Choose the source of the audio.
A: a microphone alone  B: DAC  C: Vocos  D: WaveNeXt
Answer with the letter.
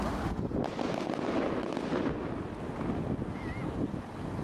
A